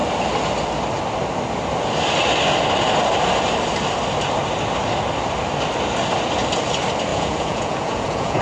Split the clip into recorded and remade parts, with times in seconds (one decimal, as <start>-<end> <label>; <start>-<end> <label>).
0.0-7.1 recorded; 7.1-8.4 remade